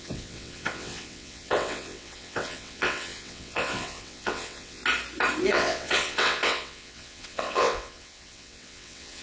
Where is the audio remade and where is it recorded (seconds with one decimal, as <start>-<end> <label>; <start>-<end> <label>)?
0.0-4.8 remade; 4.8-5.5 recorded; 5.5-9.2 remade